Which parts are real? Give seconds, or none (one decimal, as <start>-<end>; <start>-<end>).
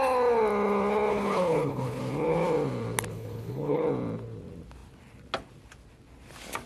0.0-1.1; 2.0-3.1; 3.8-6.7